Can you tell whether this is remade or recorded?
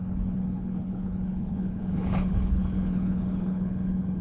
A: remade